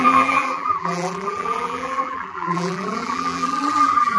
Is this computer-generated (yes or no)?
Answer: yes